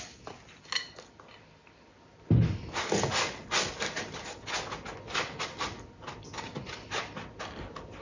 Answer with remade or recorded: recorded